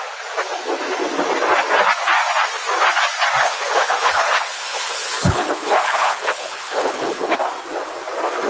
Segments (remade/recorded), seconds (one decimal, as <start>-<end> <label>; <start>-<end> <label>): 0.0-3.4 recorded; 3.4-7.4 remade; 7.4-8.5 recorded